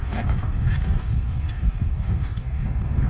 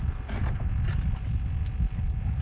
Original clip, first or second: second